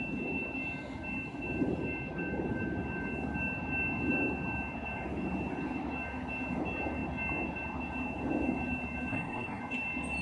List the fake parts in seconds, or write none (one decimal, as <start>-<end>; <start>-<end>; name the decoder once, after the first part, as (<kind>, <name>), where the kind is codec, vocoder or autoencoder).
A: 9.1-9.6 (codec, SNAC)